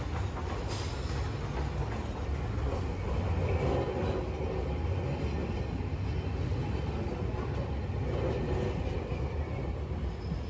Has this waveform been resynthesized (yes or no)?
no